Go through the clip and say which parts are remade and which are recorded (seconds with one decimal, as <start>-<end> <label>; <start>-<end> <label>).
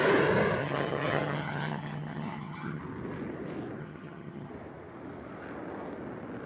0.0-0.6 recorded; 0.6-2.8 remade; 2.8-3.8 recorded; 3.8-4.5 remade; 4.5-6.5 recorded